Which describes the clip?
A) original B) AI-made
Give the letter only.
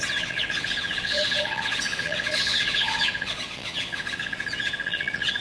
B